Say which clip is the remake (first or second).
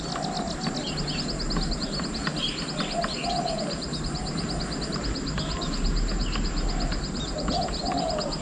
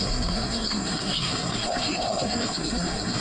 second